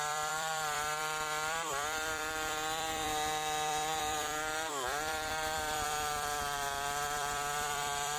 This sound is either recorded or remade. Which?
remade